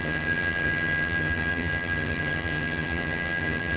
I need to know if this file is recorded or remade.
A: remade